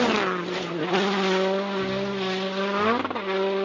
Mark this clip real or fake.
real